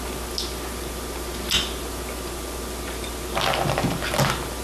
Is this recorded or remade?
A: recorded